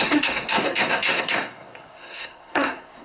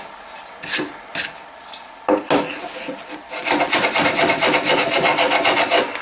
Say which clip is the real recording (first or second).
second